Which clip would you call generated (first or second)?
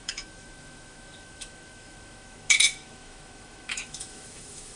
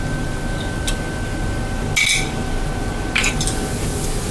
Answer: first